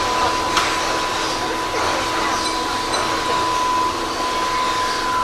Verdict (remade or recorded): recorded